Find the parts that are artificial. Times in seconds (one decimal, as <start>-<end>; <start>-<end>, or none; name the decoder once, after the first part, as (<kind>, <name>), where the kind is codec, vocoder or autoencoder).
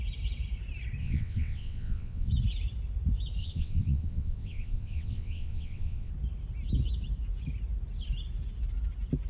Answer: 1.0-2.3 (vocoder, WaveNeXt); 3.4-6.1